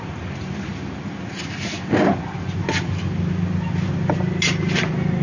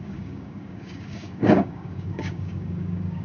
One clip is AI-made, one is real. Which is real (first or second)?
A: first